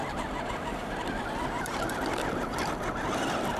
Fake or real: real